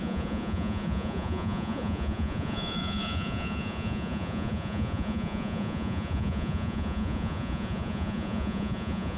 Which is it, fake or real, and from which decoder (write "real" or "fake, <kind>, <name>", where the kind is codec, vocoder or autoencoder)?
fake, vocoder, Vocos